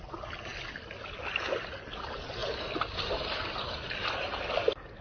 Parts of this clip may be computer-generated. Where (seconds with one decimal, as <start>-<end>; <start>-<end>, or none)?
none